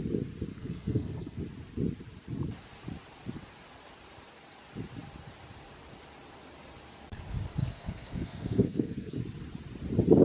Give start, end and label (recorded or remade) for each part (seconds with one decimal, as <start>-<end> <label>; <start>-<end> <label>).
0.0-0.5 recorded; 0.5-1.4 remade; 1.4-7.6 recorded; 7.6-9.2 remade; 9.2-10.2 recorded